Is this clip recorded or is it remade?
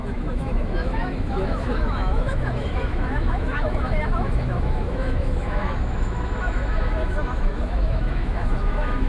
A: remade